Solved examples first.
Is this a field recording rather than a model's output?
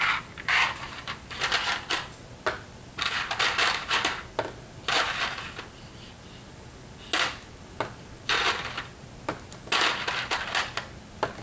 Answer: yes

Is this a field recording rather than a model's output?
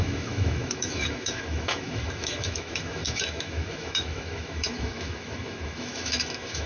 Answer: no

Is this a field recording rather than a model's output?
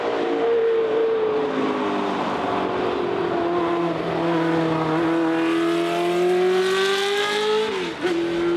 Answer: yes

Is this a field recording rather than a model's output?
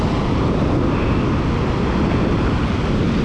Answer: yes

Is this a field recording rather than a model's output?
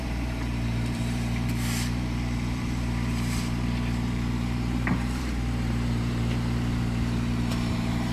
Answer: no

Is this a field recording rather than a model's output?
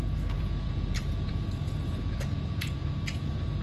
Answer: no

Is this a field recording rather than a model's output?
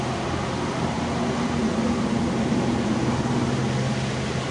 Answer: yes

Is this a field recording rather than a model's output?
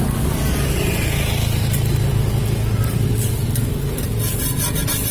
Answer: yes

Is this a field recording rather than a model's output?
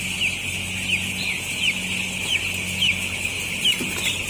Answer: yes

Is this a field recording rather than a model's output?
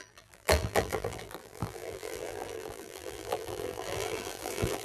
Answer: no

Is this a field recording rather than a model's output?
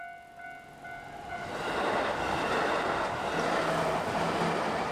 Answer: yes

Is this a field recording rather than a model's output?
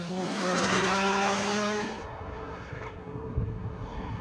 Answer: no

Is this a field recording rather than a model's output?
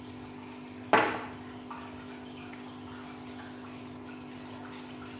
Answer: yes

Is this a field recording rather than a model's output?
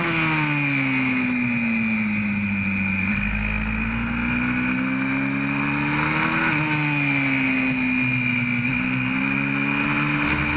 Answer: yes